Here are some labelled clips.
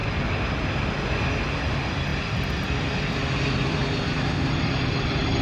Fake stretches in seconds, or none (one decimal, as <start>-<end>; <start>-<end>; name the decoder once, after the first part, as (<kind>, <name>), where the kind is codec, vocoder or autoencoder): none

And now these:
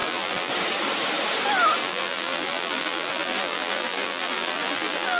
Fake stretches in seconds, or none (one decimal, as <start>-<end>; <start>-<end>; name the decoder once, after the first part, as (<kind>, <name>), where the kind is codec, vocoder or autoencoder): 0.0-0.5 (vocoder, BigVGAN v2); 1.8-5.2

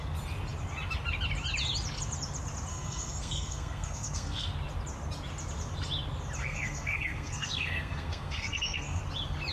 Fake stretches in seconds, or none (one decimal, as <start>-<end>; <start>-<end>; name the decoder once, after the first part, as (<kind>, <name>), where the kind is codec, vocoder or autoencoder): 2.7-4.5 (codec, SNAC); 6.4-9.0